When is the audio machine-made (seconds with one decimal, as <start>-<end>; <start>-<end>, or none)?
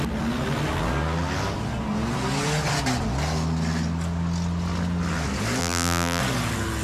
5.6-6.2